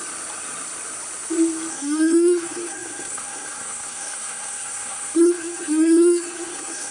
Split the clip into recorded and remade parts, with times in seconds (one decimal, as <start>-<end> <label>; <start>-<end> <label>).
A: 0.0-1.7 recorded; 1.7-6.9 remade